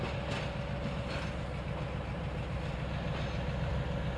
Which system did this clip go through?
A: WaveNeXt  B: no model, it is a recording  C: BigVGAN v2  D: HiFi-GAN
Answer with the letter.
B